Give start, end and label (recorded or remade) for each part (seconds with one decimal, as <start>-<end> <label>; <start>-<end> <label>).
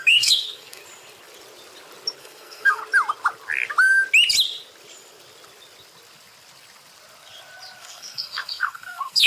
0.0-0.8 remade; 0.8-2.2 recorded; 2.2-2.8 remade; 2.8-7.8 recorded; 7.8-9.3 remade